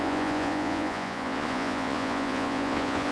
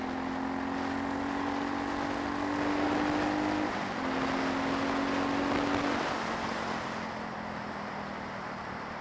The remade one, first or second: first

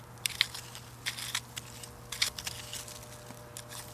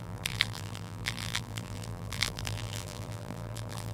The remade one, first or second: second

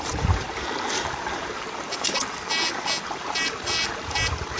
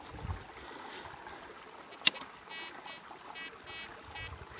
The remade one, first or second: first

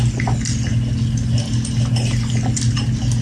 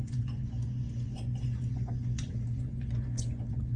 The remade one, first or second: second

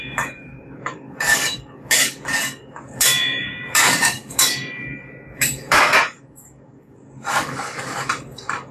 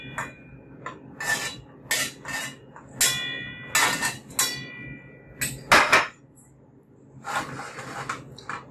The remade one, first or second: first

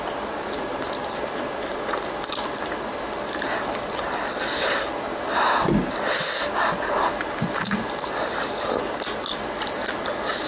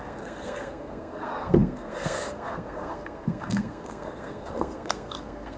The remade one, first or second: second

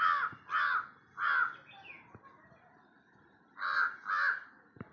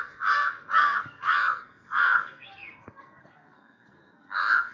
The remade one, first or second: second